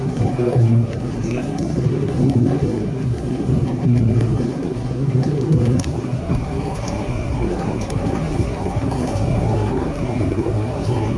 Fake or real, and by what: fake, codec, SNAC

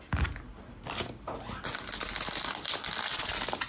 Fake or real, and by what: real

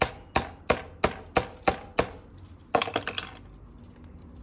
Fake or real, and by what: real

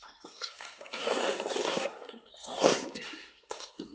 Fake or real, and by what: fake, codec, SNAC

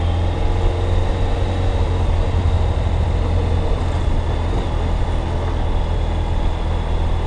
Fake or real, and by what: real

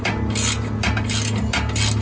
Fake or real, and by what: real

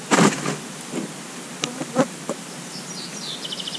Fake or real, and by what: real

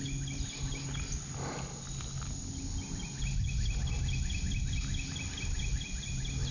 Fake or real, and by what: real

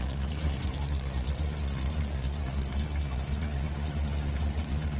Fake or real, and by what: fake, vocoder, Vocos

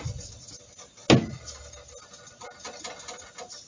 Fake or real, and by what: real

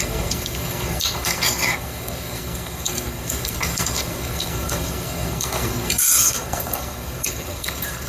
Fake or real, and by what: fake, codec, SNAC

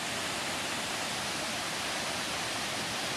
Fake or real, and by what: real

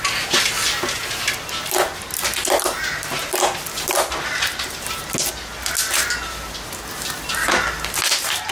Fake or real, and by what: real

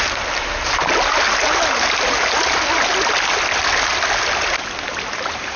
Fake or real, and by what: real